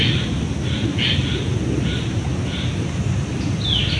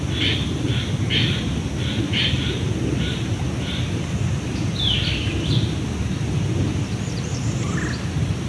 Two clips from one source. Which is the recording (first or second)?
first